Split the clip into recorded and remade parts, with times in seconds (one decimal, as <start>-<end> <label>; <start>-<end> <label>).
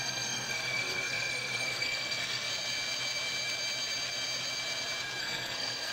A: 0.0-2.5 remade; 2.5-5.2 recorded; 5.2-5.9 remade